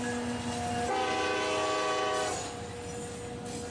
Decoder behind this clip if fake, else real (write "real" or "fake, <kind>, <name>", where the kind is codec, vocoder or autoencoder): real